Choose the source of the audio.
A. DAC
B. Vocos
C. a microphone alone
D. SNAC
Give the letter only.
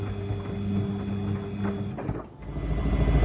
C